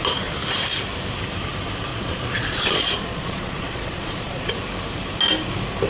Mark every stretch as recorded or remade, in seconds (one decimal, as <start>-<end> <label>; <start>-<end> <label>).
0.0-1.9 recorded; 1.9-4.5 remade; 4.5-5.9 recorded

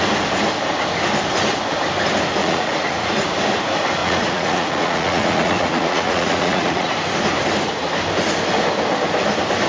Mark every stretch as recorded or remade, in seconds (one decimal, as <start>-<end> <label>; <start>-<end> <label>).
0.0-2.4 recorded; 2.4-3.1 remade; 3.1-4.0 recorded; 4.0-6.9 remade; 6.9-9.7 recorded

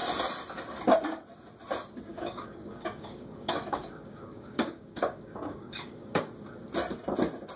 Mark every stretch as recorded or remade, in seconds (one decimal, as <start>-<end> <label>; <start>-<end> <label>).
0.0-2.1 recorded; 2.1-6.3 remade; 6.3-7.6 recorded

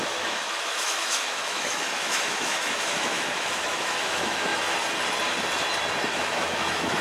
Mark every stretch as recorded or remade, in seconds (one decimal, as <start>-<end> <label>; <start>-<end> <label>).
0.0-4.5 remade; 4.5-6.1 recorded; 6.1-7.0 remade